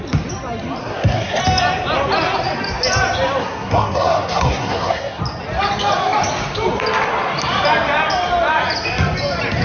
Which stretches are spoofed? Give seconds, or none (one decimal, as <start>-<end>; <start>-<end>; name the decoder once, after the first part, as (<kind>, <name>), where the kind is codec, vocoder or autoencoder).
0.8-1.4 (codec, SNAC); 3.4-5.2